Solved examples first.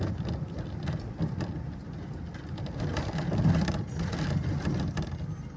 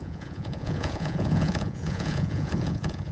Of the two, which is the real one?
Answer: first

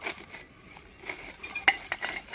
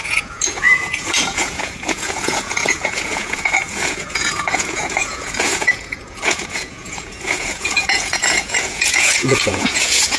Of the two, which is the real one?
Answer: first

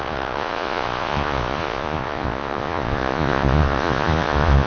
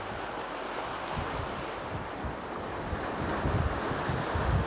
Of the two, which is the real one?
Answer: second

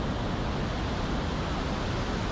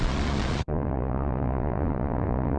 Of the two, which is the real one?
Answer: first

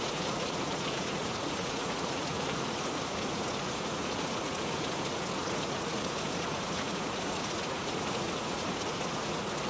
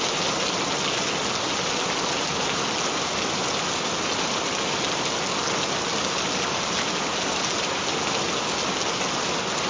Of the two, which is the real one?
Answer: second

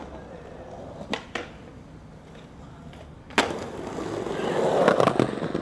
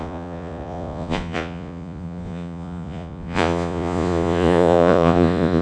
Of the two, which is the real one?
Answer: first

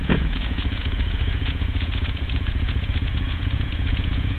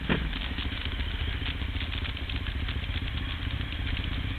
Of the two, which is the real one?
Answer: second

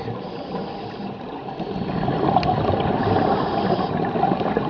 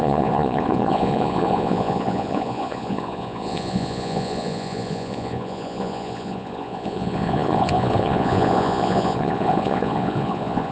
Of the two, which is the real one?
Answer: first